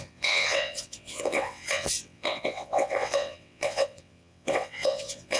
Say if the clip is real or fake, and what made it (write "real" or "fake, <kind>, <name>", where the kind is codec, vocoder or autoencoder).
fake, vocoder, WaveNeXt